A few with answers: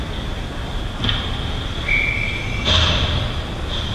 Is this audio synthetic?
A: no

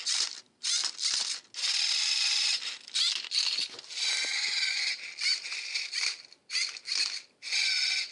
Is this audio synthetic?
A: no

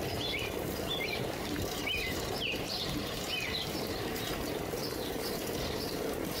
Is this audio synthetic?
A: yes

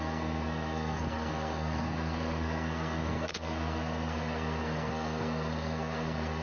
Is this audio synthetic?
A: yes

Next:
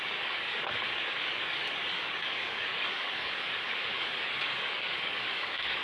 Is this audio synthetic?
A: yes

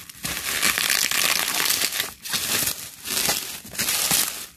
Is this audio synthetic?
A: no